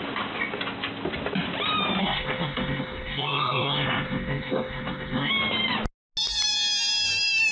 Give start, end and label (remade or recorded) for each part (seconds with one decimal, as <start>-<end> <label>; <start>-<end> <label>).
0.0-2.0 recorded; 2.0-5.3 remade; 5.3-7.5 recorded